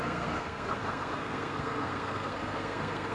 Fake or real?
fake